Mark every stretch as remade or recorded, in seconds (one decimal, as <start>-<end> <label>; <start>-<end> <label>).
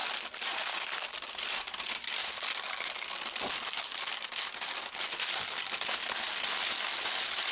0.0-7.5 recorded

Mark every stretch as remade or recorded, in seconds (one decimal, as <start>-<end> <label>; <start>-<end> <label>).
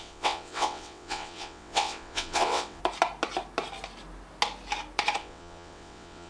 0.0-2.8 remade; 2.8-5.2 recorded; 5.2-6.3 remade